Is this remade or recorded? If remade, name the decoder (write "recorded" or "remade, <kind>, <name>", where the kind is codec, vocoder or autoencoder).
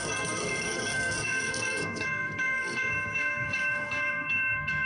remade, codec, SNAC